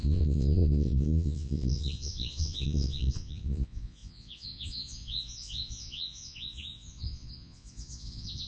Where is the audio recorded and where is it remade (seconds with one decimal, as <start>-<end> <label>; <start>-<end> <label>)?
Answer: 0.0-8.5 remade